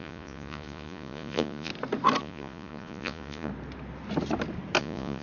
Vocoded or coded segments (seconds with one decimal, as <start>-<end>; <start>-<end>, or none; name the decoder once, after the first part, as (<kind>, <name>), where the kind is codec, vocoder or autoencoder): 0.0-1.7 (vocoder, Vocos); 2.2-3.5; 4.8-5.2